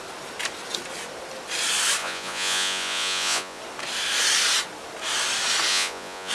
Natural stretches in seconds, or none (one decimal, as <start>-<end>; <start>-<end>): 0.0-2.0; 3.6-5.7